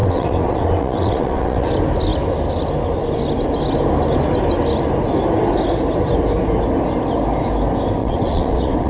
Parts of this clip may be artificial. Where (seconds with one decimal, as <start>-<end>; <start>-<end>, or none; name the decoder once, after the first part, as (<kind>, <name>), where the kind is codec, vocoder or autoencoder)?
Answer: 0.0-1.7 (vocoder, WaveNeXt); 8.0-8.9